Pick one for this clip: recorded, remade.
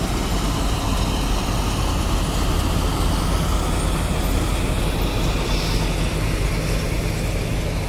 recorded